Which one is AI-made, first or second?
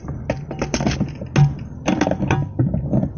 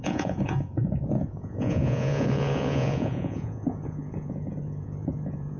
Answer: second